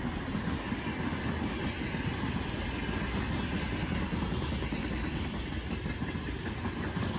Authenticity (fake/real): real